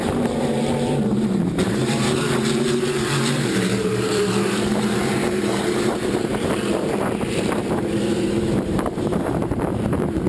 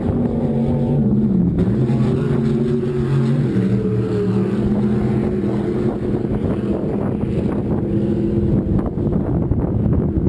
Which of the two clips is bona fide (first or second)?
second